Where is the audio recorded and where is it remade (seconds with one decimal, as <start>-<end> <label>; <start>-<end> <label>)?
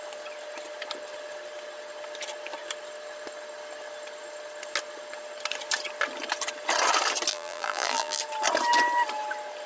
0.0-7.3 recorded; 7.3-8.2 remade; 8.2-9.7 recorded